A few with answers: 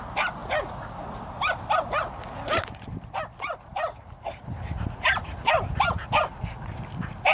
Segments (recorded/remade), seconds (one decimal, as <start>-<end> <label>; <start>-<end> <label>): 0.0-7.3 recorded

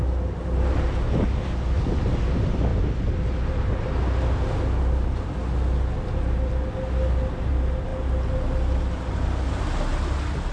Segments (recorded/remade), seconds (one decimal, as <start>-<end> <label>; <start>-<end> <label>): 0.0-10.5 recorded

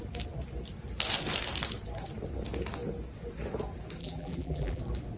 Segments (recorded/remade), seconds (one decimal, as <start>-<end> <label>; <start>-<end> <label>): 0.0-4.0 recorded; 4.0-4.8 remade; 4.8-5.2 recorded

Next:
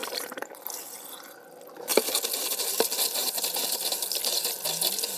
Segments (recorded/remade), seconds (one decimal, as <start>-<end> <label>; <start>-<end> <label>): 0.0-0.7 remade; 0.7-3.2 recorded; 3.2-4.0 remade; 4.0-5.2 recorded

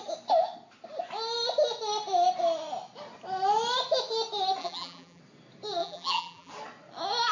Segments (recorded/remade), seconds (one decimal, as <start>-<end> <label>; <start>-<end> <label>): 0.0-4.6 recorded; 4.6-5.2 remade; 5.2-5.8 recorded; 5.8-6.5 remade; 6.5-7.3 recorded